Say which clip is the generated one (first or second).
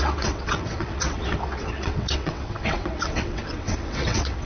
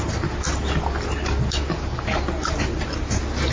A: first